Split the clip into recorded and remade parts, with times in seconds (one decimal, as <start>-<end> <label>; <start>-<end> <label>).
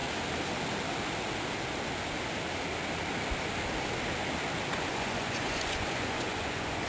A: 0.0-4.7 recorded; 4.7-6.9 remade